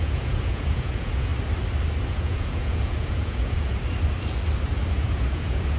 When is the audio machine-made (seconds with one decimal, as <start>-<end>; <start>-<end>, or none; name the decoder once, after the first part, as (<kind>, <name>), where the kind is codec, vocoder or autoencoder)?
0.0-1.3 (vocoder, Vocos); 2.1-3.7; 4.9-5.8